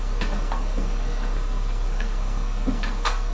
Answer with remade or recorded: remade